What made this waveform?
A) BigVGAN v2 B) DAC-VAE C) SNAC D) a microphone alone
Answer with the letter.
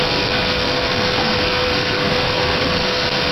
C